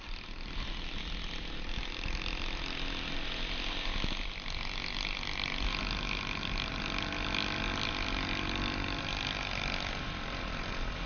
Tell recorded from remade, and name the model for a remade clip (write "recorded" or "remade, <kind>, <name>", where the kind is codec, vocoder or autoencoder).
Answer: recorded